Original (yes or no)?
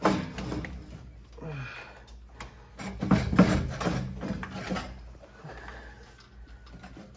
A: yes